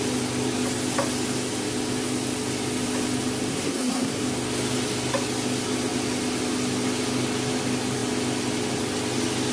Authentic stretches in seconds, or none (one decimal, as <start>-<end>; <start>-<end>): 0.0-3.5; 4.2-9.5